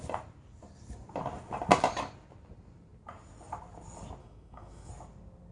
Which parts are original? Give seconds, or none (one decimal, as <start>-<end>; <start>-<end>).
0.0-4.2; 4.9-5.5